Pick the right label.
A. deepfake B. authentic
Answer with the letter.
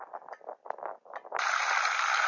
B